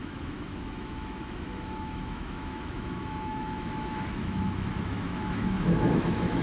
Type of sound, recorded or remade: remade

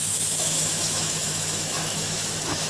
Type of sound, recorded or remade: remade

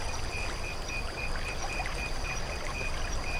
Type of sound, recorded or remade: recorded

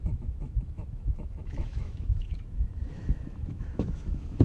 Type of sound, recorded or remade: remade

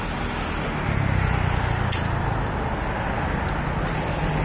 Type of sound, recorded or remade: recorded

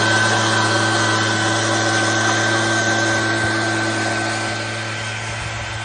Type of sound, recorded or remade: recorded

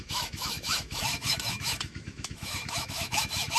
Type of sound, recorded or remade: remade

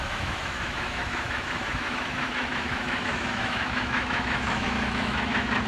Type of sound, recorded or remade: remade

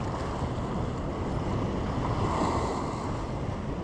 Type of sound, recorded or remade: recorded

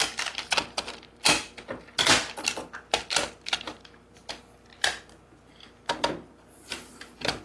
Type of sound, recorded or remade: recorded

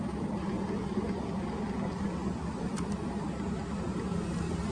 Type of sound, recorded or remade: recorded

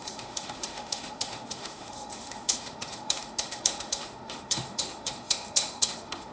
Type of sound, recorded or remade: remade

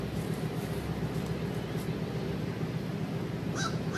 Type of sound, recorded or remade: recorded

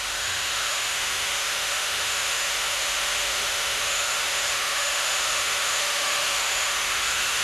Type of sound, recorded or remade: remade